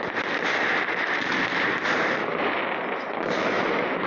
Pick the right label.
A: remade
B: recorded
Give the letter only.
B